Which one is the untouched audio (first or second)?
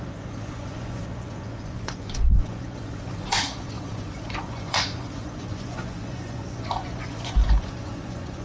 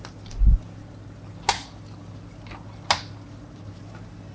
second